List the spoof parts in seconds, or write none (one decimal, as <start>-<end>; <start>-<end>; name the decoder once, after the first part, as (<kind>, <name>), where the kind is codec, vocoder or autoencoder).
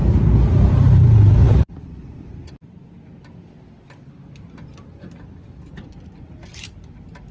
1.4-2.5 (vocoder, Vocos)